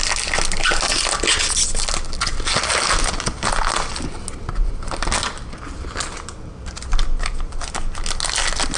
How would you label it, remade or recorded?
recorded